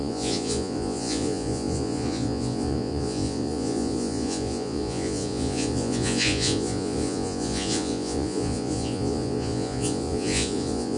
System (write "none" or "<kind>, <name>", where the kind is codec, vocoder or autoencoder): vocoder, Vocos